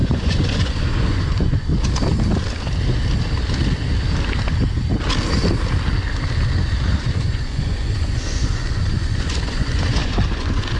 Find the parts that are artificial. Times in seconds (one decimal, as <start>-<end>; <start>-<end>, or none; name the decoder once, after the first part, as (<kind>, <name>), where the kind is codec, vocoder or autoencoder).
0.0-1.7 (vocoder, Vocos); 7.0-10.8